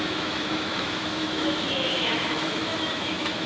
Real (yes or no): no